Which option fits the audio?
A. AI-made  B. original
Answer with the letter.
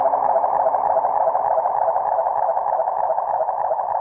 A